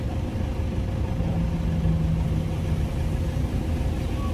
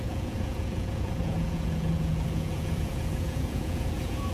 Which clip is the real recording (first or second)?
first